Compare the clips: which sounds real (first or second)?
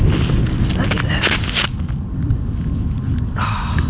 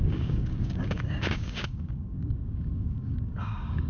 first